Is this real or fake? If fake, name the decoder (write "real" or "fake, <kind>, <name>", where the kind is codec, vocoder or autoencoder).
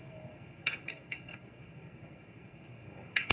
fake, codec, SNAC